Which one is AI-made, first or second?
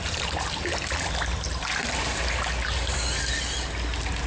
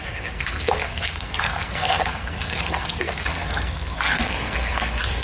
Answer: second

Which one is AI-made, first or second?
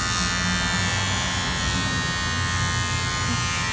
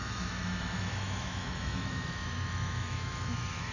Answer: second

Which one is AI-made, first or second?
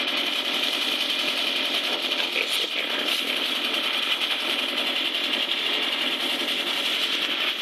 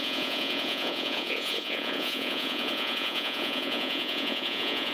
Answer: second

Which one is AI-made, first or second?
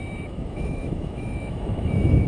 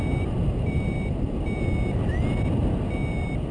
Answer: first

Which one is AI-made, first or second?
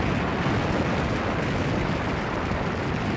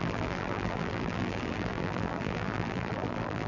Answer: second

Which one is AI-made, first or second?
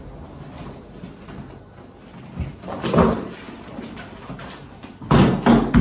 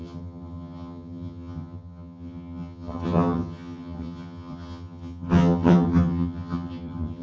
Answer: second